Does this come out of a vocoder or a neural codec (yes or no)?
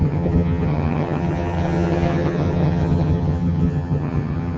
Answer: yes